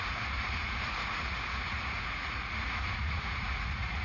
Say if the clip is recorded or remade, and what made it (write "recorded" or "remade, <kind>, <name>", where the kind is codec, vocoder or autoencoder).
remade, vocoder, Vocos